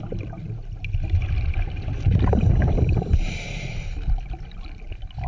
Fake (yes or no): yes